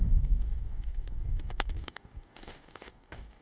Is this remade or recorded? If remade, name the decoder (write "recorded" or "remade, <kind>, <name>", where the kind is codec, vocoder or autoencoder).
remade, codec, DAC